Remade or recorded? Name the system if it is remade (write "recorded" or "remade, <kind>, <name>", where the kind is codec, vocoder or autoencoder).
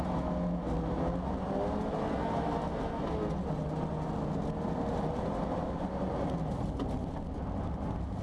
recorded